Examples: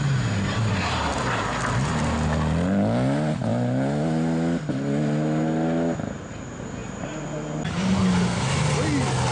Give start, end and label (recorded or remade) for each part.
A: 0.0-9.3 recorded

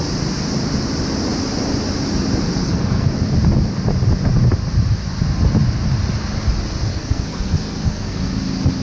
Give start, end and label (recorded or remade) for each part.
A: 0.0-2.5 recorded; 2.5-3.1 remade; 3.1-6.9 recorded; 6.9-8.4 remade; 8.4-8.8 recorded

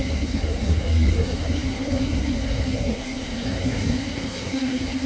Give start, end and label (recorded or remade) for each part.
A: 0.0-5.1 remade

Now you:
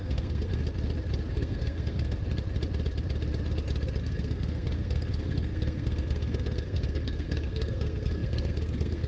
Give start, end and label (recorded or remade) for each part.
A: 0.0-0.6 remade; 0.6-1.3 recorded; 1.3-2.2 remade; 2.2-4.0 recorded; 4.0-9.1 remade

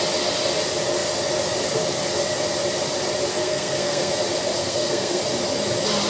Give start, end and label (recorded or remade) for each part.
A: 0.0-3.3 recorded; 3.3-4.1 remade; 4.1-4.6 recorded; 4.6-5.2 remade; 5.2-6.1 recorded